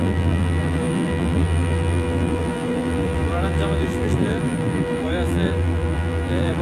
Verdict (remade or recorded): remade